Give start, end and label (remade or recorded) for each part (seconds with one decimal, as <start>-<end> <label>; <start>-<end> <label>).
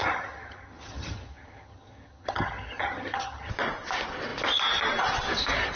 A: 0.0-3.5 remade; 3.5-5.8 recorded